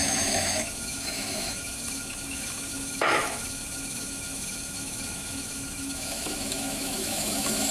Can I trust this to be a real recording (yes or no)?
no